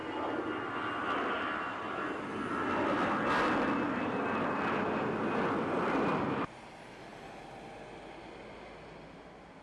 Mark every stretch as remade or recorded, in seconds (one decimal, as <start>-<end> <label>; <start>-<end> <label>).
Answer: 0.0-9.6 recorded